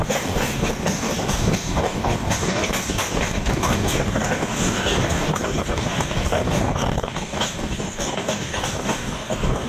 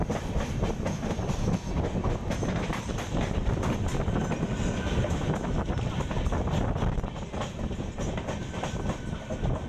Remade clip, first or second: first